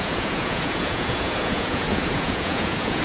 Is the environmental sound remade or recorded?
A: remade